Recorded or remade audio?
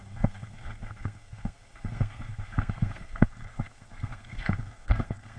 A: remade